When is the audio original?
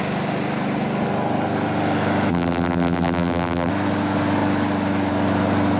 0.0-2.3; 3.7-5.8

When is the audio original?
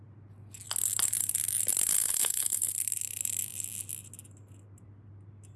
0.0-1.9; 2.7-5.6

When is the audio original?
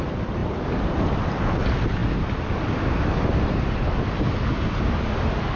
0.0-5.6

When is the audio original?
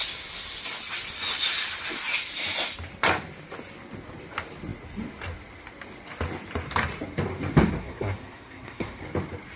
0.0-7.8; 9.0-9.6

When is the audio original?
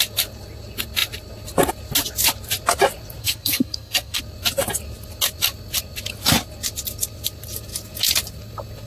0.0-3.2; 4.2-8.9